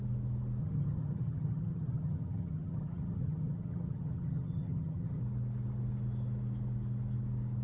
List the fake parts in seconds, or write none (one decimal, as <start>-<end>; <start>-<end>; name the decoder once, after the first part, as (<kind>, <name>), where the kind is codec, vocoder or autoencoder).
0.6-5.2 (vocoder, HiFi-GAN)